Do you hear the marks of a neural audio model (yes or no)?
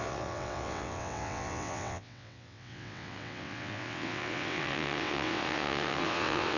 yes